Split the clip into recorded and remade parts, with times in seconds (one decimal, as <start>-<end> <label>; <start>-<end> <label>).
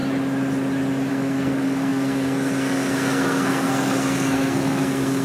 0.0-1.1 recorded; 1.1-5.2 remade